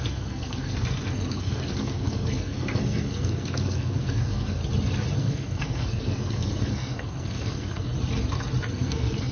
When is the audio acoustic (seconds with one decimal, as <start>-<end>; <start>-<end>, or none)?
4.6-5.2; 7.9-8.7